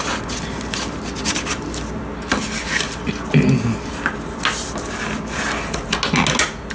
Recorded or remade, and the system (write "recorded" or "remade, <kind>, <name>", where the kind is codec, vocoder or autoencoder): recorded